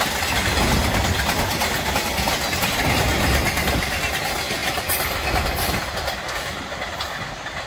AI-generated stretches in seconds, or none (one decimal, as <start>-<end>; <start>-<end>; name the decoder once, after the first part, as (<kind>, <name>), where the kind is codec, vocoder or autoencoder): none